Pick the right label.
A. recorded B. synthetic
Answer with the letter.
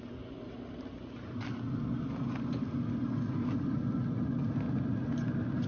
A